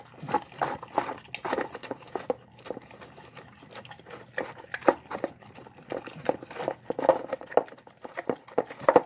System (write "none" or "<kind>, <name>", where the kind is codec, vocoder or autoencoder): none